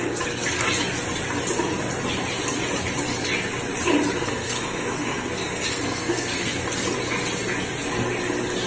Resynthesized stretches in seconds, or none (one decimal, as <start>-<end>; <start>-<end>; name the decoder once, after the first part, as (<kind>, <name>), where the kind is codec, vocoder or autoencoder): 4.1-6.6 (codec, SNAC)